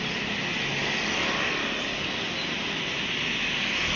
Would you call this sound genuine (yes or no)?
yes